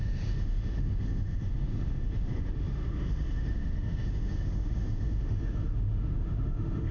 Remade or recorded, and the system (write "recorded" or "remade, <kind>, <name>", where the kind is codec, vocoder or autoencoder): remade, autoencoder, DAC-VAE